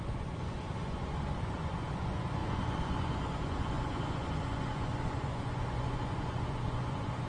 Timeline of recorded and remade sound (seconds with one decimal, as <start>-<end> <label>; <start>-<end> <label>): 0.0-7.3 remade